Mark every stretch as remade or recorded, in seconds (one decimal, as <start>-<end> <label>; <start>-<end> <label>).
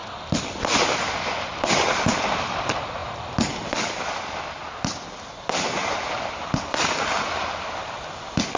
0.0-8.6 recorded